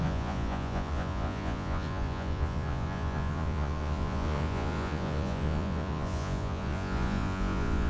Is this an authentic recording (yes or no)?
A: no